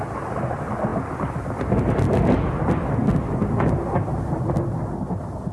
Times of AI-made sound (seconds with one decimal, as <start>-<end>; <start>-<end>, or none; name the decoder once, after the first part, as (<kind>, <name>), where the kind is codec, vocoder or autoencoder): none